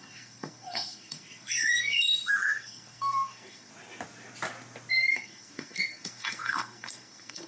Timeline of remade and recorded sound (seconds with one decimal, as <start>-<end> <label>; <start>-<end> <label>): 0.0-3.7 remade; 3.7-4.9 recorded; 4.9-7.5 remade